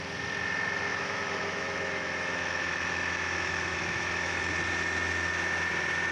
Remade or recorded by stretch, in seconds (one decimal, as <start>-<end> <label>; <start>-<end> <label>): 0.0-0.9 recorded; 0.9-4.5 remade; 4.5-6.1 recorded